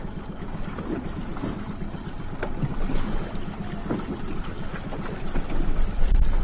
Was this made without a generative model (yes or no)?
yes